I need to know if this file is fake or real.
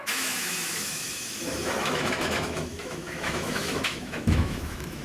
fake